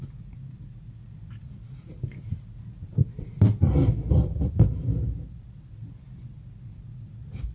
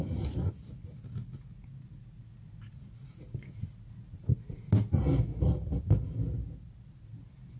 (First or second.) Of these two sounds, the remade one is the first